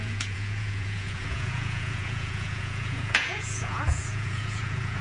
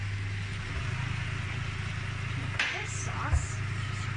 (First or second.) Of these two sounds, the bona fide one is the second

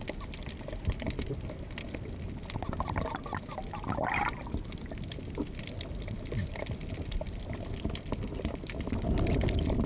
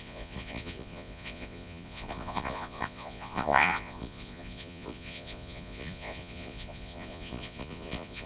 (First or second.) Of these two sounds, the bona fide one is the first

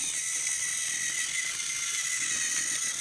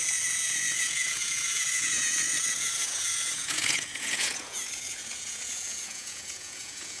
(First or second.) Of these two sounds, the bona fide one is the first